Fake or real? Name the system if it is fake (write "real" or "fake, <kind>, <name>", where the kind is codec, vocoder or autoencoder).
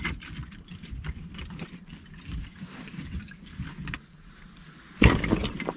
real